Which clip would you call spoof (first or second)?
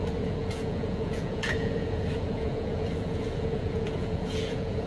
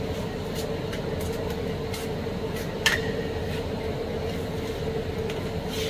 first